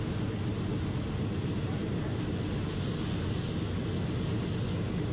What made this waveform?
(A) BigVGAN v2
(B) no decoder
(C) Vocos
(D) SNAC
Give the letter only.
B